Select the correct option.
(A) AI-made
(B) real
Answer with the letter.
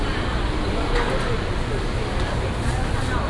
B